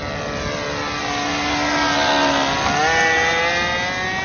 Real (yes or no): yes